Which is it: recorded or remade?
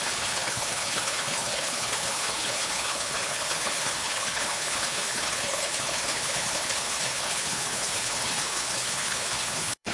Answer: remade